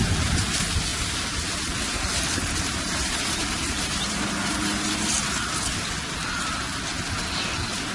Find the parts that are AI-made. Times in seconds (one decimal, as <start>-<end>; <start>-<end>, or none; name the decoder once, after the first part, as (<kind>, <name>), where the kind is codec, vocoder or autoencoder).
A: 0.9-4.9 (vocoder, BigVGAN v2)